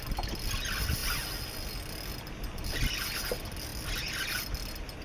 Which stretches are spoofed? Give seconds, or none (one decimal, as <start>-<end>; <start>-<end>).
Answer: none